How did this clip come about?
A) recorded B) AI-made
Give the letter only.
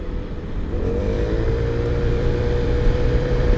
B